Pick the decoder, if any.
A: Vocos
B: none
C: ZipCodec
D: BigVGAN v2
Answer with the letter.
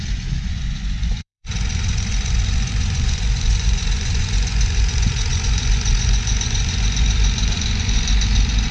A